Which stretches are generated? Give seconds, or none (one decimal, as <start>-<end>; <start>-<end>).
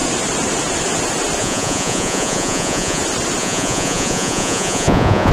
1.4-3.0; 3.4-5.3